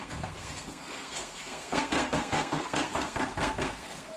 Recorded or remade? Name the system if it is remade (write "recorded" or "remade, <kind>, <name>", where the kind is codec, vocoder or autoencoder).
remade, codec, SNAC